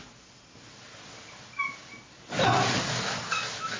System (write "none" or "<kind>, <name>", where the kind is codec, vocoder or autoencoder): none